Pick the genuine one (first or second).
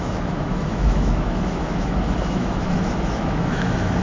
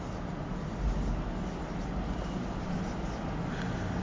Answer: second